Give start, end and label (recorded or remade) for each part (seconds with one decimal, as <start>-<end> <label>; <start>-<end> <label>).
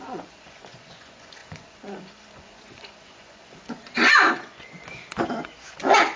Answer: 0.0-6.2 remade